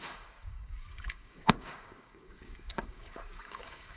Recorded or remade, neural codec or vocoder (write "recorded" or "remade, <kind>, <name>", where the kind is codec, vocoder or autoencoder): remade, codec, DAC